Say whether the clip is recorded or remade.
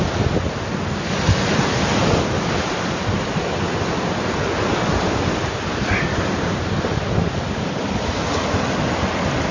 recorded